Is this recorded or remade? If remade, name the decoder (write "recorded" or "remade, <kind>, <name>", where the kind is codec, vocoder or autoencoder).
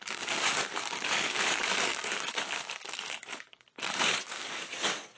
remade, codec, DAC